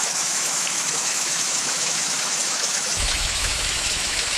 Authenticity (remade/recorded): remade